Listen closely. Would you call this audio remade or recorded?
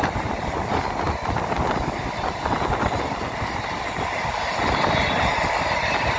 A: recorded